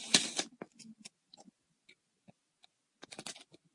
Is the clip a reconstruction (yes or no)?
no